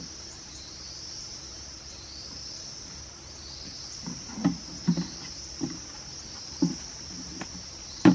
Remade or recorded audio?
recorded